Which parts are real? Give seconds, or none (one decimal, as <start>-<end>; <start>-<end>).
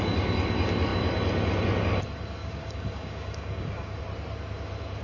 0.0-2.4; 4.0-5.0